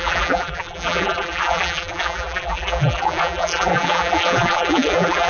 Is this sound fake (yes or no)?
yes